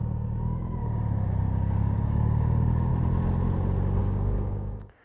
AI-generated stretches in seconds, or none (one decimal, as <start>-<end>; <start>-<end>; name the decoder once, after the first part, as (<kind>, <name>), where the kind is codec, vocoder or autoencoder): 0.0-0.8 (codec, DAC); 1.4-2.9; 4.0-5.0